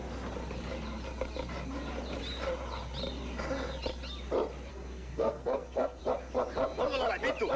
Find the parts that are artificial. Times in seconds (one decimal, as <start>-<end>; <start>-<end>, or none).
4.7-6.0